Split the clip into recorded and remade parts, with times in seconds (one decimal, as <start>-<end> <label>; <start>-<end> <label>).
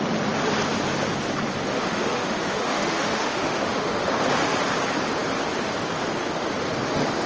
0.0-1.7 recorded; 1.7-4.1 remade; 4.1-7.3 recorded